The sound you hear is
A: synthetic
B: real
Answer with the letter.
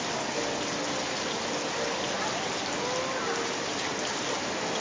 B